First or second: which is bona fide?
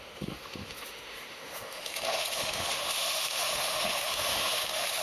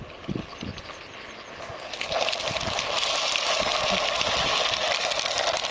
second